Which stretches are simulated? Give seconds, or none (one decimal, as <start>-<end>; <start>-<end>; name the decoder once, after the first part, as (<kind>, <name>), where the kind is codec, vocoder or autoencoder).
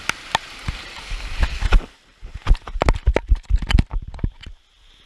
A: 0.6-2.0 (vocoder, BigVGAN v2); 3.2-4.3